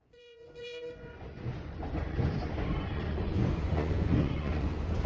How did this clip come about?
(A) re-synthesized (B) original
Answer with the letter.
A